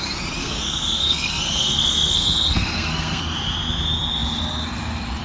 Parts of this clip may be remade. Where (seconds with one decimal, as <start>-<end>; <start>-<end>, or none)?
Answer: 0.4-3.2